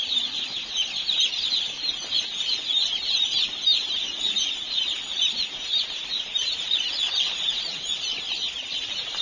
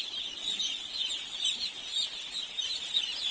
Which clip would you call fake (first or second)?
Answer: first